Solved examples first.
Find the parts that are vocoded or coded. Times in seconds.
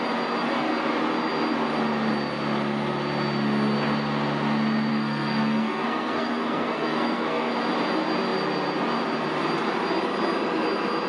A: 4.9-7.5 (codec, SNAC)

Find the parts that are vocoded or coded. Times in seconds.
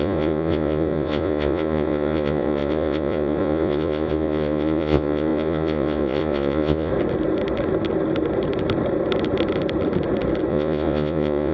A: 0.0-6.9 (vocoder, Vocos); 10.5-11.5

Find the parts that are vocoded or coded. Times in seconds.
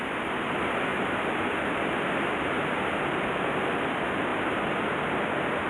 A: 0.9-3.0 (vocoder, BigVGAN v2); 4.3-5.7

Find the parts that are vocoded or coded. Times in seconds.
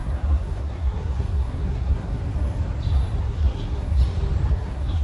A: 0.0-2.2 (codec, SNAC); 3.2-4.0; 4.5-5.0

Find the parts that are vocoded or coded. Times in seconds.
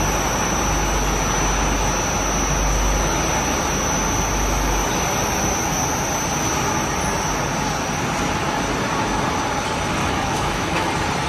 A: 10.0-10.9 (autoencoder, DAC-VAE)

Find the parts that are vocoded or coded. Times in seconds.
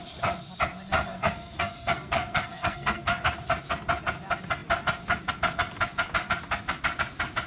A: 1.1-3.2 (codec, SNAC)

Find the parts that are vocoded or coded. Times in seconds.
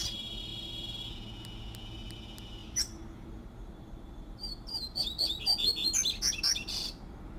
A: 2.6-5.4 (vocoder, BigVGAN v2)